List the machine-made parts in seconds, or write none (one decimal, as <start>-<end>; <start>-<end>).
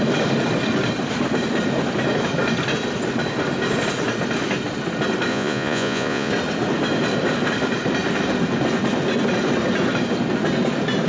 5.3-6.3